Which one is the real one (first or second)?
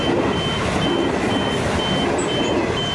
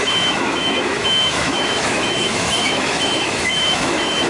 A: first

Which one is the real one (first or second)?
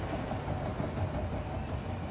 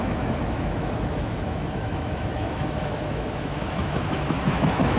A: first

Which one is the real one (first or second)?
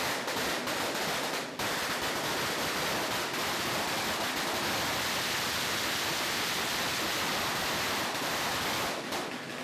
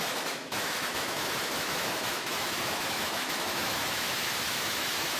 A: first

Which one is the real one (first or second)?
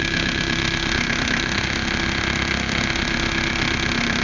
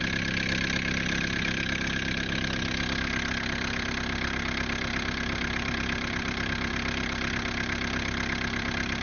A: second